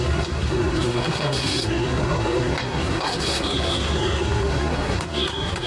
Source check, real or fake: fake